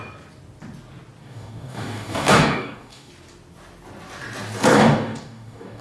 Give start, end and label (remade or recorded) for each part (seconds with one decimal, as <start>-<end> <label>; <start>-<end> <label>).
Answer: 0.0-1.2 recorded; 1.2-3.1 remade; 3.1-4.7 recorded; 4.7-5.8 remade